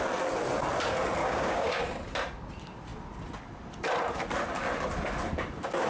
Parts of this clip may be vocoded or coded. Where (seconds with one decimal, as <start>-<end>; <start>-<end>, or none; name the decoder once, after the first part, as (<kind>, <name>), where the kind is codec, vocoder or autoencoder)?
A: 1.2-1.8 (codec, DAC)